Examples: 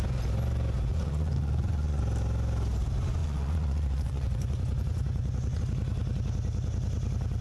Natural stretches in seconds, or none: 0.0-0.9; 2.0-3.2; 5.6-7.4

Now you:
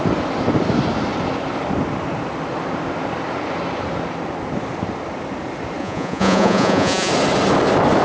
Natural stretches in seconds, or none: 0.0-5.8; 7.1-8.0

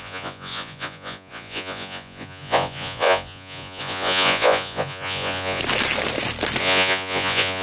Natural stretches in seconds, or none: 5.6-6.6

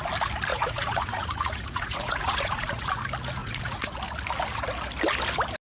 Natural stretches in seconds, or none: 0.0-0.5; 3.0-3.4; 4.0-5.6